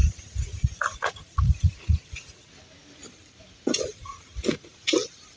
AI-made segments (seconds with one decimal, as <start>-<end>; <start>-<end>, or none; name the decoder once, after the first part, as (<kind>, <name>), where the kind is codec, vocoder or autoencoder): 0.0-2.5 (vocoder, Vocos); 3.9-4.9